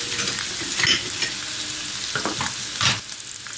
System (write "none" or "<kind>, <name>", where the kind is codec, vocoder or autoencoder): none